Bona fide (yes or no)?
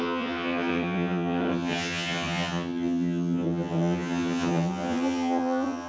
no